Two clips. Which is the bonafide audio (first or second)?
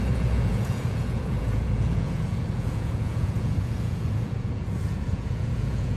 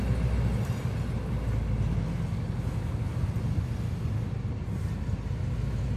second